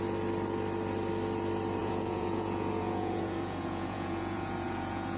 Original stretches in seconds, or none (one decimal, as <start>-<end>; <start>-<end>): 0.0-1.8